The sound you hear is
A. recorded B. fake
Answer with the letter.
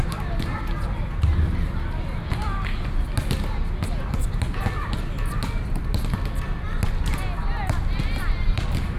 A